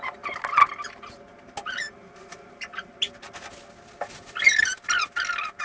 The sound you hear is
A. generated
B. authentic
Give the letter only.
B